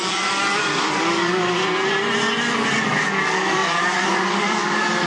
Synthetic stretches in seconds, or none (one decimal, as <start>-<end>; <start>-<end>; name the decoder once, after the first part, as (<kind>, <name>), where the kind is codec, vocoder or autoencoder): 0.0-1.6 (codec, DAC); 3.2-5.1